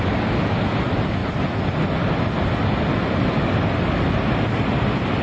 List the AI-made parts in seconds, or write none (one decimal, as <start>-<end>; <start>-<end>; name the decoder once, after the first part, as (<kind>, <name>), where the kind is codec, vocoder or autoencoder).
none